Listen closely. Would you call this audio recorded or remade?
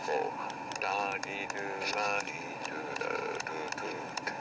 recorded